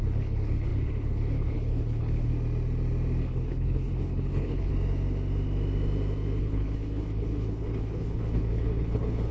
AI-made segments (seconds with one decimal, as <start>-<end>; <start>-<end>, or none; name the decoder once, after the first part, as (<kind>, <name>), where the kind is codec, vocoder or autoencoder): 0.0-2.3 (codec, HILCodec); 3.2-4.7; 6.4-9.3